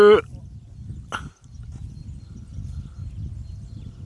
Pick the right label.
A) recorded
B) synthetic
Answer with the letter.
A